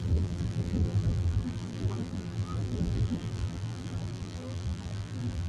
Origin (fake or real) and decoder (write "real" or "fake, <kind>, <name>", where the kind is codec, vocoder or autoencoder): fake, vocoder, BigVGAN v2